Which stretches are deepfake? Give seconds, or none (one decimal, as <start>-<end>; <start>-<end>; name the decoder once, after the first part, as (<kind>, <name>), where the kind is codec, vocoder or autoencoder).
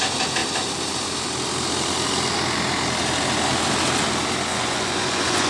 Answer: 4.5-5.5 (vocoder, Vocos)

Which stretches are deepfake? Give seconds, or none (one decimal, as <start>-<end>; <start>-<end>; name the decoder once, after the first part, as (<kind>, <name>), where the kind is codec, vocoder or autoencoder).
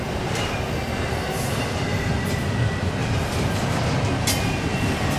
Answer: none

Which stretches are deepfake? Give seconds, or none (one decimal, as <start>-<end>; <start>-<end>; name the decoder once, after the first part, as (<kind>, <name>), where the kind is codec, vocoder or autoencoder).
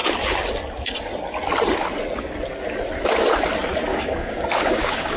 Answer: 3.9-5.2 (codec, DAC)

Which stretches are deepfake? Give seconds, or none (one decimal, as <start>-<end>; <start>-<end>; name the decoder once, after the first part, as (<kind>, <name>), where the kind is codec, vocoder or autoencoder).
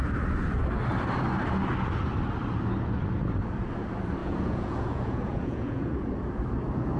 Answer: 4.2-6.1 (vocoder, Vocos)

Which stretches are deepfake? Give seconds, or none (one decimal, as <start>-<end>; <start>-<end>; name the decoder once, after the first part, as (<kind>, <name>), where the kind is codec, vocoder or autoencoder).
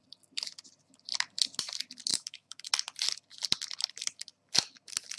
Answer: 2.1-2.7 (autoencoder, DAC-VAE)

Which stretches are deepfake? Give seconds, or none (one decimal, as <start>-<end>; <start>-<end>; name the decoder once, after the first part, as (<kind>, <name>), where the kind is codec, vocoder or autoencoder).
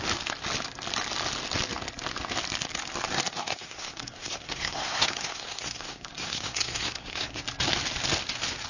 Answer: 3.4-7.4 (codec, SNAC)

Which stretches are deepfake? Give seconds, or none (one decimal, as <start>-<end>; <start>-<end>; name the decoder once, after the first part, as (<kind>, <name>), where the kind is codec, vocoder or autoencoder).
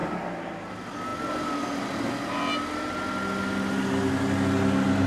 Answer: none